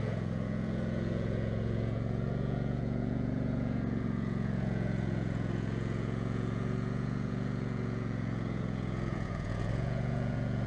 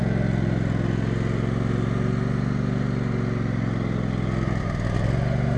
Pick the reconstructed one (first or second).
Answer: first